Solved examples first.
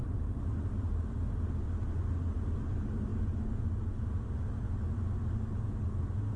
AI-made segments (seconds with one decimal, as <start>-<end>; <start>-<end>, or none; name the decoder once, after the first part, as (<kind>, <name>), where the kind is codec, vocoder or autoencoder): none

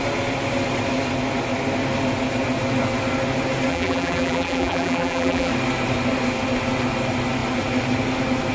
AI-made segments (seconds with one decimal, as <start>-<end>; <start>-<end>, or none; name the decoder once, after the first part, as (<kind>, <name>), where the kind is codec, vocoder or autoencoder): 3.7-5.5 (vocoder, BigVGAN v2)

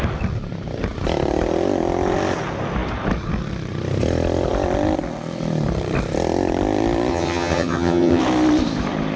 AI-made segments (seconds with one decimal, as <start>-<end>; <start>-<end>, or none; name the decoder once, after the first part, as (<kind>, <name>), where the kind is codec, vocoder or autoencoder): 7.1-8.2 (vocoder, HiFi-GAN)

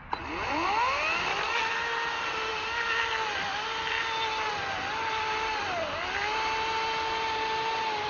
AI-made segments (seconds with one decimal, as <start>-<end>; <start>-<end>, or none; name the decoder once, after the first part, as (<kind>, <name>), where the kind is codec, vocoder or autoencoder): none